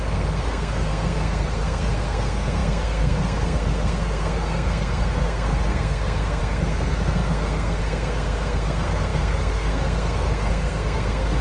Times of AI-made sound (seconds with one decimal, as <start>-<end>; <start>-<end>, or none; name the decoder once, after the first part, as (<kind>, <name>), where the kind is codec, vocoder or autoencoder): 0.0-11.4 (codec, SNAC)